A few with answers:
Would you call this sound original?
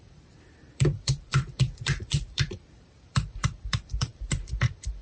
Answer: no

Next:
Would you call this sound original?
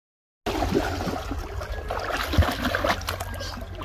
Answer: yes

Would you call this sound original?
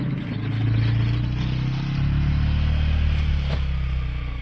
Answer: yes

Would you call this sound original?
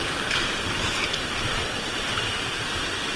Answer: yes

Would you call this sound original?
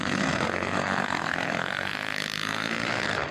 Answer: no